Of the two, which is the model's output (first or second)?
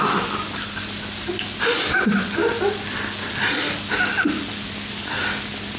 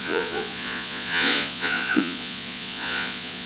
second